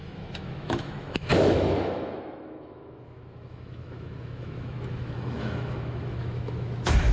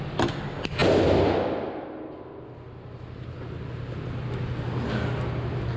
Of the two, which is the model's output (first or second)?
first